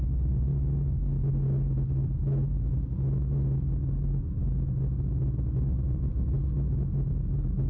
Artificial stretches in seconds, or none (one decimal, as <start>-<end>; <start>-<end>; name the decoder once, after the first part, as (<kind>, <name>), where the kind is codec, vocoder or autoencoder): none